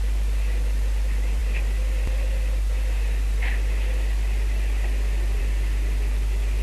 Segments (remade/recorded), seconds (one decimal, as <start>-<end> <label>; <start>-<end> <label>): 0.0-6.6 recorded